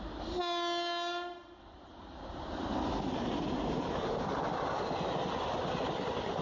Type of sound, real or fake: real